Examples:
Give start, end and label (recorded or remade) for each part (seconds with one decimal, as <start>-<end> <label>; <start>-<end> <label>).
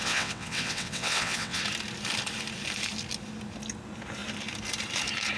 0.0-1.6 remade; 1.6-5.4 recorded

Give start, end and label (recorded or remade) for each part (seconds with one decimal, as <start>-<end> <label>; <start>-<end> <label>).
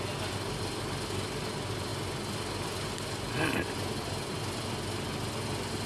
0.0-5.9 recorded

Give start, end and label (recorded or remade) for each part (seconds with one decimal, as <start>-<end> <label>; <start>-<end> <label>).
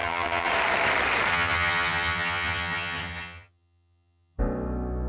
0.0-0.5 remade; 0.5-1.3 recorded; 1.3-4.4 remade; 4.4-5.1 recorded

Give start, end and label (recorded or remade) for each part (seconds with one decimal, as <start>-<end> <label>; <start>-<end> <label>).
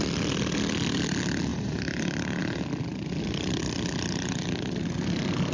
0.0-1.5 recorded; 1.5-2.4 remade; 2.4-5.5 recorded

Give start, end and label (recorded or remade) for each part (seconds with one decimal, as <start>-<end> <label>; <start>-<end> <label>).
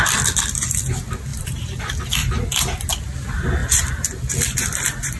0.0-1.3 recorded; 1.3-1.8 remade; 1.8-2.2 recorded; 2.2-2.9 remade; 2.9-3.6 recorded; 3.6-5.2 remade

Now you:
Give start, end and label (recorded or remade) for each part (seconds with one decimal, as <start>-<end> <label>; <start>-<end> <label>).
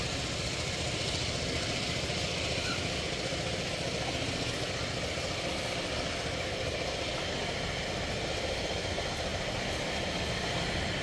0.0-11.0 recorded